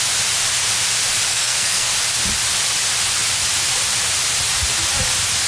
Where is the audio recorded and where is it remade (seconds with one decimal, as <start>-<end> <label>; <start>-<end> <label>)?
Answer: 0.0-1.3 recorded; 1.3-1.9 remade; 1.9-5.5 recorded